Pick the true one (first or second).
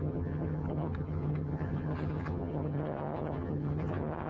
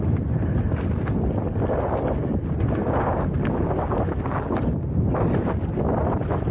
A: second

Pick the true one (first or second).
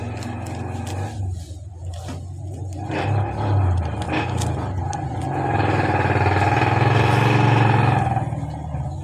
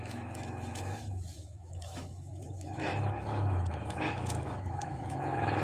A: first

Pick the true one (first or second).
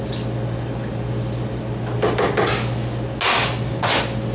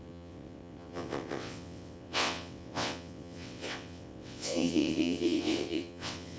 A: first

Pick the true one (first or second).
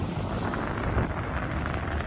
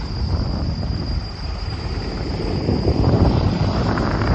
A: first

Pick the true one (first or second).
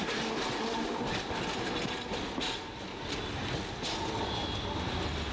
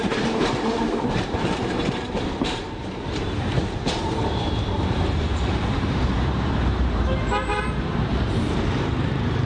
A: first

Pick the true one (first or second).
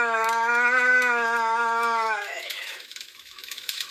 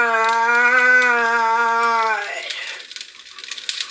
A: second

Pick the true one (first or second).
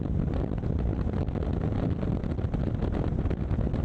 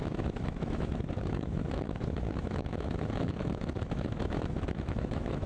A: first